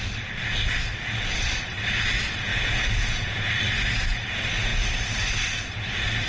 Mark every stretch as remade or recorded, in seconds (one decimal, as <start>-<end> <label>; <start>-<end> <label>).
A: 0.0-2.5 recorded; 2.5-3.5 remade; 3.5-6.3 recorded